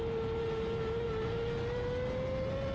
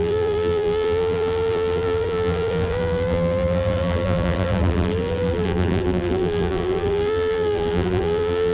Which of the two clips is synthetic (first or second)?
second